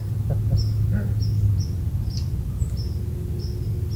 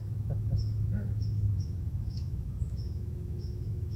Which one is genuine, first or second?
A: first